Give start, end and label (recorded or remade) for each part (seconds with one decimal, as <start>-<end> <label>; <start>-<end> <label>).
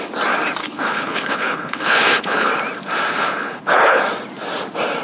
0.0-0.6 recorded; 0.6-2.5 remade; 2.5-3.4 recorded; 3.4-4.0 remade; 4.0-5.0 recorded